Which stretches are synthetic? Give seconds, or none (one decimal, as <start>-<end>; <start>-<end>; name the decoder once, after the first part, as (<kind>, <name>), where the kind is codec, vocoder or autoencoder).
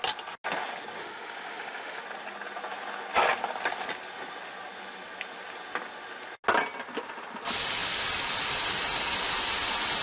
1.0-2.0 (autoencoder, DAC-VAE)